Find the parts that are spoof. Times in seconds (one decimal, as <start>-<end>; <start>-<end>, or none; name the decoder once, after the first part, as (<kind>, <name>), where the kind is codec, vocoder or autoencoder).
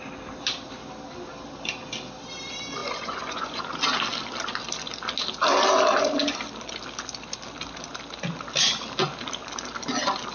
2.8-3.6 (vocoder, Vocos)